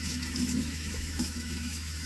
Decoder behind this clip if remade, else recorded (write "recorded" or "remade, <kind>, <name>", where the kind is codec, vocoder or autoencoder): remade, autoencoder, DAC-VAE